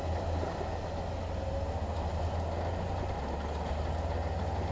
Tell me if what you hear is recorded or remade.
recorded